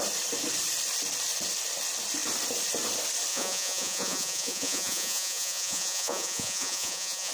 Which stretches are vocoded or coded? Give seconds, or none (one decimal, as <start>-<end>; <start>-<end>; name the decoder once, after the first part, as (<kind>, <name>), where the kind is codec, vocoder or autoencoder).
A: 3.3-7.3 (vocoder, Vocos)